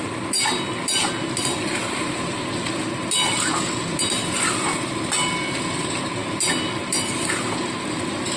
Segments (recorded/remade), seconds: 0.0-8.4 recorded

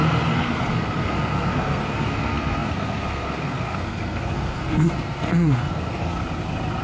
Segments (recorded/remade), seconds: 0.0-6.2 remade; 6.2-6.8 recorded